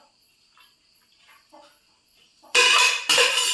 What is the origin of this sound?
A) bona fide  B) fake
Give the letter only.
A